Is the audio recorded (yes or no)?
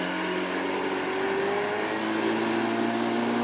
yes